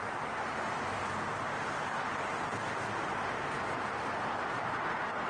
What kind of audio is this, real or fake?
real